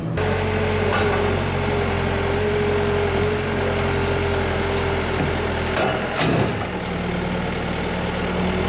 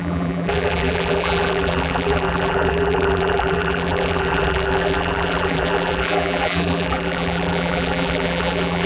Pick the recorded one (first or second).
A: first